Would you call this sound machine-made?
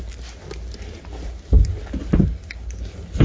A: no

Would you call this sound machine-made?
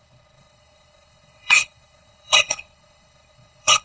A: yes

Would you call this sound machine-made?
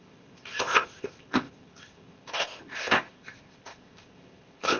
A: yes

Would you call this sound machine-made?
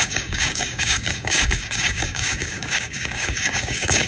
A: yes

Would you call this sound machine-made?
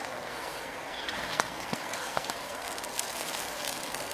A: yes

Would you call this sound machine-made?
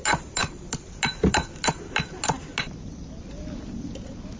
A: no